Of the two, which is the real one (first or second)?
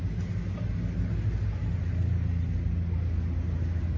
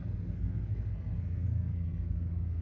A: first